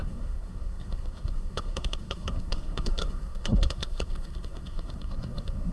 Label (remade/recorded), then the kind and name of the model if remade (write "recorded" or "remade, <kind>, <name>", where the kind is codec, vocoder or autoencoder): remade, codec, SNAC